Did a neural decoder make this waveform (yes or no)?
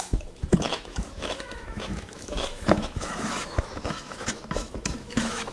yes